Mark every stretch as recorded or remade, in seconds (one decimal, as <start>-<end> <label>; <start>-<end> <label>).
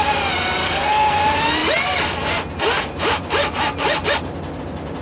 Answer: 0.0-0.6 recorded; 0.6-1.2 remade; 1.2-5.0 recorded